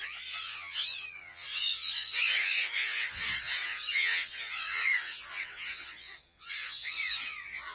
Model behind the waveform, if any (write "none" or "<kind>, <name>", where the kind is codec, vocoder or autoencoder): vocoder, Vocos